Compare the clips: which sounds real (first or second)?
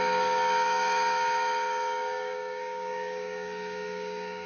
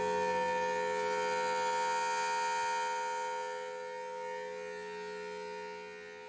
second